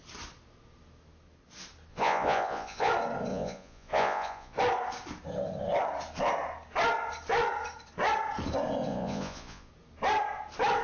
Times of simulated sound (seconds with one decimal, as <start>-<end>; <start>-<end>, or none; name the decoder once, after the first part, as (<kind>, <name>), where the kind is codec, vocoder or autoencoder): 1.9-2.9 (vocoder, Vocos); 3.3-4.6; 8.9-9.7